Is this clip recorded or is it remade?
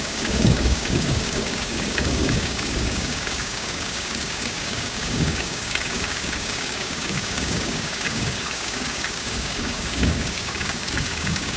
remade